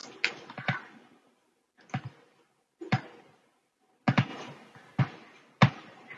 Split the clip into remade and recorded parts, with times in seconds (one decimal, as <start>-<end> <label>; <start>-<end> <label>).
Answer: 0.0-6.2 recorded